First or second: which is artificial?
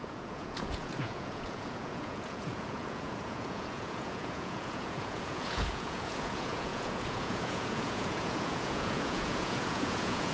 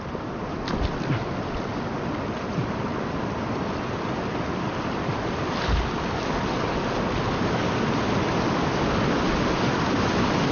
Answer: first